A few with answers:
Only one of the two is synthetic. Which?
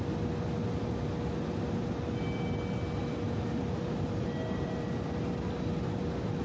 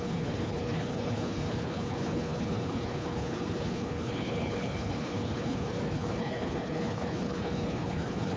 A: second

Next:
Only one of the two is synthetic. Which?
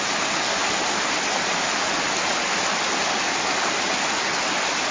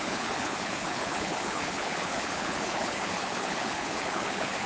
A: second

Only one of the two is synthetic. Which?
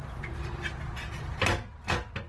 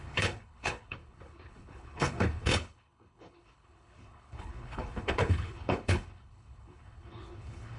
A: second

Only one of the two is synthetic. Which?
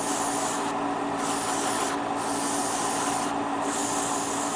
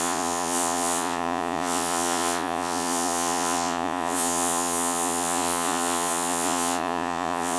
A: second